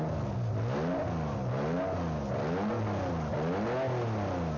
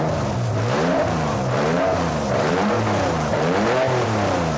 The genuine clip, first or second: first